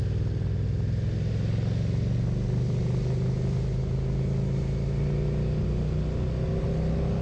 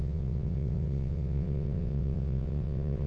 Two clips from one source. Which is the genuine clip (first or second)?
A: first